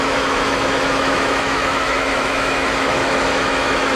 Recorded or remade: remade